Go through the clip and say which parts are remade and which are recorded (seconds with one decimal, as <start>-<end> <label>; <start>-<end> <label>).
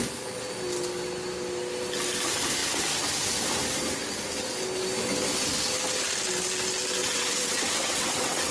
0.0-7.0 recorded; 7.0-8.5 remade